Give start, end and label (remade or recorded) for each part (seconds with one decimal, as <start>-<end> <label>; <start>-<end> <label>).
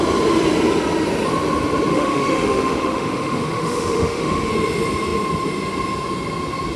0.0-1.9 recorded; 1.9-4.5 remade; 4.5-6.8 recorded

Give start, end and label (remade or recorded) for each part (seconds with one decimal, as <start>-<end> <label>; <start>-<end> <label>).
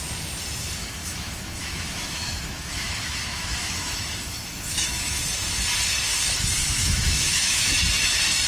0.0-0.8 recorded; 0.8-5.2 remade; 5.2-6.6 recorded; 6.6-7.7 remade; 7.7-8.5 recorded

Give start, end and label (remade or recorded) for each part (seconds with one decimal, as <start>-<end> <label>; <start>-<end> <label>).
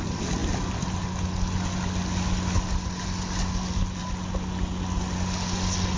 0.0-6.0 recorded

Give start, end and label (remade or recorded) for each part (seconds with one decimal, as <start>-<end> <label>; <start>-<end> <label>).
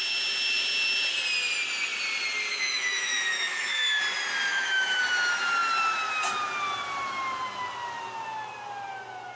0.0-2.5 recorded; 2.5-4.0 remade; 4.0-4.5 recorded; 4.5-5.0 remade; 5.0-9.4 recorded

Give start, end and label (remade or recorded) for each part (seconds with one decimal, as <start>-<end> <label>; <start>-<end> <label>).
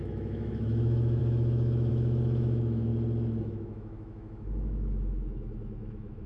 0.0-2.9 remade; 2.9-3.4 recorded; 3.4-6.3 remade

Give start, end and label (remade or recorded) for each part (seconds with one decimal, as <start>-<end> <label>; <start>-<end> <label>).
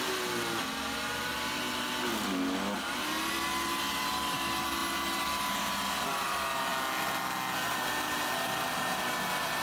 0.0-9.6 recorded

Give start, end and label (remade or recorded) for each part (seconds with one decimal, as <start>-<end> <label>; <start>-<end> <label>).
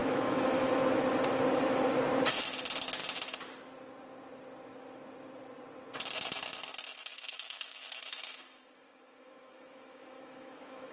0.0-0.7 remade; 0.7-7.1 recorded; 7.1-10.9 remade